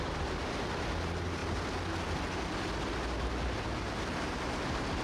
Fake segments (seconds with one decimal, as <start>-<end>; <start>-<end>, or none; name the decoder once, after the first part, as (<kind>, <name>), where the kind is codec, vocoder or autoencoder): none